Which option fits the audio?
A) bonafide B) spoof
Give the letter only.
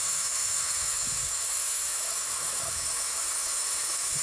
B